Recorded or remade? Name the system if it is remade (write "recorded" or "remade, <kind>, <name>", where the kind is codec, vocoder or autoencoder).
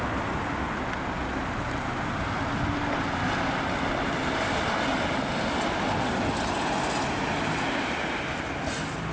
recorded